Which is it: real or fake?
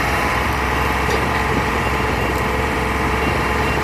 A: fake